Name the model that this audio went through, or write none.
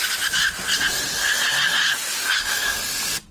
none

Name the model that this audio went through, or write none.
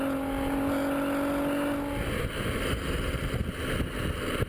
none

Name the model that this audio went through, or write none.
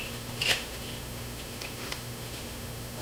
autoencoder, DAC-VAE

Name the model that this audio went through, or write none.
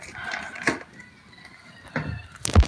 none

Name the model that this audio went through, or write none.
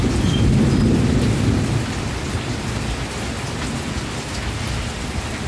none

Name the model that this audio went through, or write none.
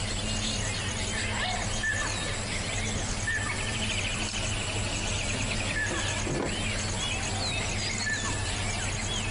none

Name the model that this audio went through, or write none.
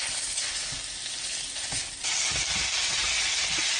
none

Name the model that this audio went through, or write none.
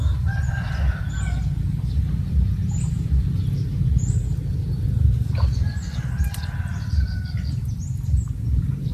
none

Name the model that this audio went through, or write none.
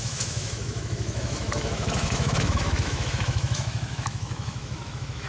autoencoder, DAC-VAE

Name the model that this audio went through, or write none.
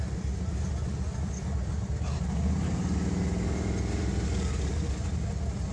none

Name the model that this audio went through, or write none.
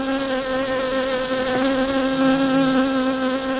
none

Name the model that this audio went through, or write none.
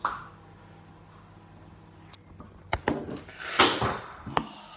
none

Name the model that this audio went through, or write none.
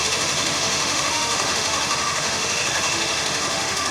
autoencoder, DAC-VAE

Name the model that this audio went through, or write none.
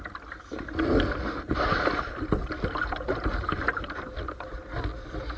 none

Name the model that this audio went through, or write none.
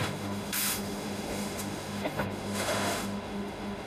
autoencoder, DAC-VAE